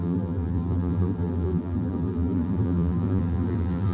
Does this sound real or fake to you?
fake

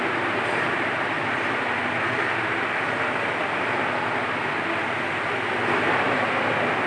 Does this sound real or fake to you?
real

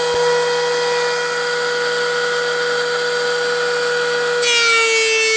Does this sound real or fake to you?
real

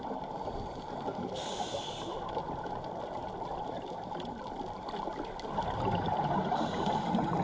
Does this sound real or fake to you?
real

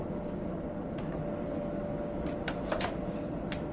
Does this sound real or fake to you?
real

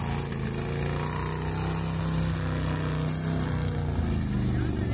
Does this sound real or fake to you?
real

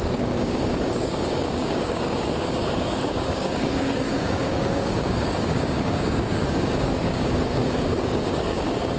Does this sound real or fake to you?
fake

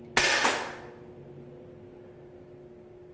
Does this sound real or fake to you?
real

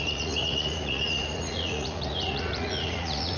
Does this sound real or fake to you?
fake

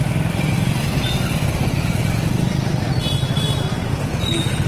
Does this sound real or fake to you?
real